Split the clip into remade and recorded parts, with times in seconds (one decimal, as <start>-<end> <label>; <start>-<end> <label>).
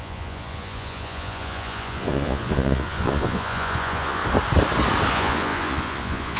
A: 0.0-4.2 remade; 4.2-5.1 recorded; 5.1-6.4 remade